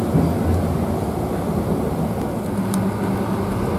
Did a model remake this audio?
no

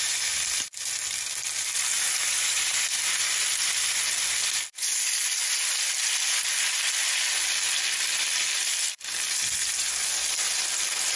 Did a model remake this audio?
no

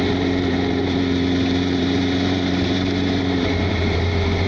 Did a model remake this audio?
yes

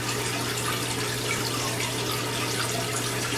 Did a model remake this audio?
no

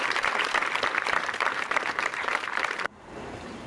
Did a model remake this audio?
yes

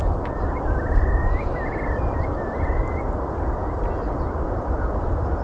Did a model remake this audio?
no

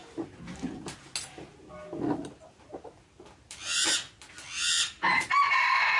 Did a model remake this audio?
no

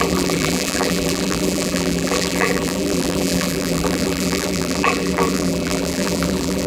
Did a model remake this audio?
yes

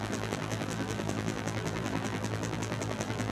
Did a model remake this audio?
yes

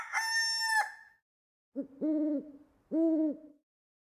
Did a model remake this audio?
no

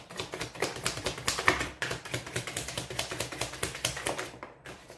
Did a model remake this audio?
yes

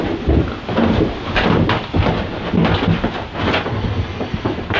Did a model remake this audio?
no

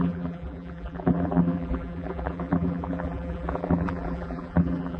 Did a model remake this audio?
yes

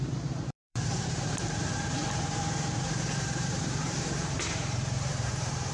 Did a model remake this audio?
yes